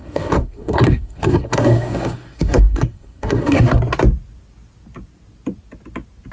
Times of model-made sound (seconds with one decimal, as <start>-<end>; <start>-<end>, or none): 0.0-3.8